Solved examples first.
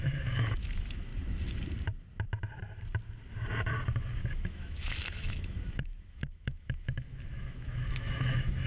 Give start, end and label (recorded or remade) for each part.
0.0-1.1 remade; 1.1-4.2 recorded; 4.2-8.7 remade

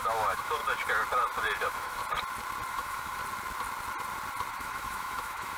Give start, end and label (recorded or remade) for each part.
0.0-0.6 remade; 0.6-1.6 recorded; 1.6-2.0 remade; 2.0-2.7 recorded; 2.7-3.2 remade; 3.2-4.5 recorded; 4.5-5.6 remade

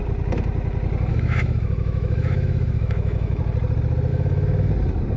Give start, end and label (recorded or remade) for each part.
0.0-1.1 recorded; 1.1-3.4 remade; 3.4-4.1 recorded; 4.1-4.7 remade; 4.7-5.2 recorded